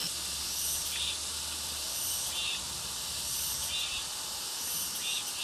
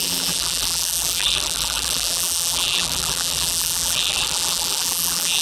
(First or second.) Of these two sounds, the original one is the first